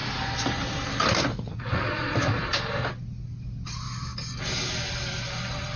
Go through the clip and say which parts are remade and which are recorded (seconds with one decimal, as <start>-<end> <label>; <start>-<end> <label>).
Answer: 0.0-1.3 recorded; 1.3-2.4 remade; 2.4-5.8 recorded